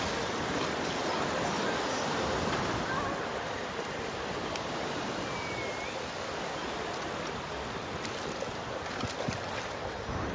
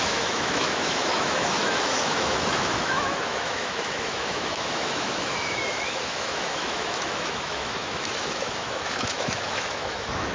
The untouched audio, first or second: first